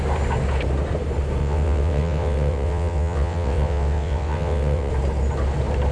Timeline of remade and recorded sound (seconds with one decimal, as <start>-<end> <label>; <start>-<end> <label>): 0.0-1.4 recorded; 1.4-4.9 remade; 4.9-5.9 recorded

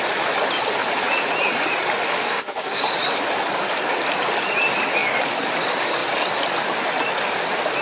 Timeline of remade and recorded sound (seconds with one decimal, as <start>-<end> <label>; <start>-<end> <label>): 0.0-2.1 recorded; 2.1-2.8 remade; 2.8-7.8 recorded

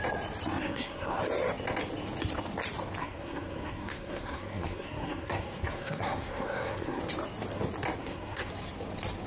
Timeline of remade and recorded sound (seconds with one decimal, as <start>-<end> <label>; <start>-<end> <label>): 0.0-0.6 recorded; 0.6-1.2 remade; 1.2-3.0 recorded; 3.0-7.0 remade; 7.0-8.0 recorded; 8.0-8.5 remade; 8.5-9.3 recorded

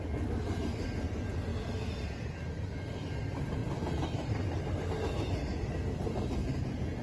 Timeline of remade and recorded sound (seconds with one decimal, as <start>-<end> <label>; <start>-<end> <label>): 0.0-1.5 recorded; 1.5-3.2 remade; 3.2-3.6 recorded; 3.6-4.7 remade; 4.7-5.5 recorded; 5.5-6.2 remade; 6.2-7.0 recorded

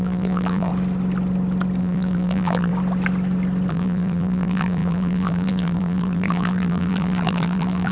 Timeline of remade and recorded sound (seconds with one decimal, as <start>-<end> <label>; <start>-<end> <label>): 0.0-0.7 remade; 0.7-1.8 recorded; 1.8-2.7 remade; 2.7-3.7 recorded; 3.7-7.9 remade

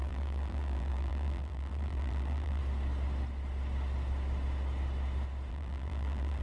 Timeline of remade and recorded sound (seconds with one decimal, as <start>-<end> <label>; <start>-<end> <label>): 0.0-2.6 remade; 2.6-5.5 recorded; 5.5-6.4 remade

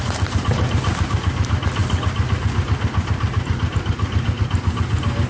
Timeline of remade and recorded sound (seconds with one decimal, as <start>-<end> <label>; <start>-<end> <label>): 0.0-5.3 recorded

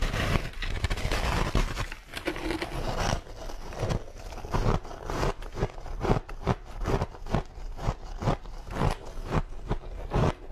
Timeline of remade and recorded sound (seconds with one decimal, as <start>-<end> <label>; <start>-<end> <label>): 0.0-10.5 recorded